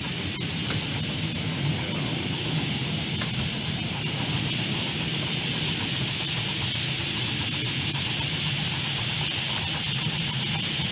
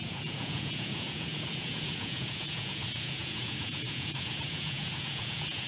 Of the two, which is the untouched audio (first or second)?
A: first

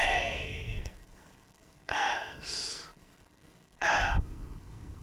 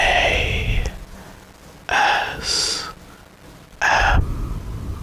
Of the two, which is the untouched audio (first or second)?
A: second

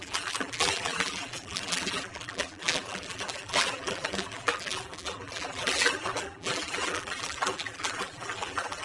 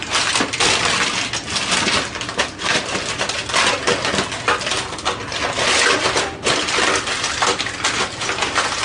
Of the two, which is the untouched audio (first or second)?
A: second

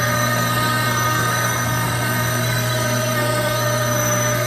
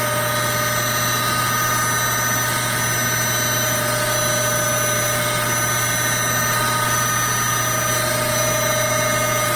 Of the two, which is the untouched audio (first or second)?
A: second